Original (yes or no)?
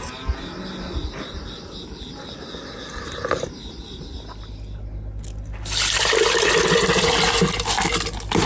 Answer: yes